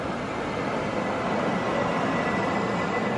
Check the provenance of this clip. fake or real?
real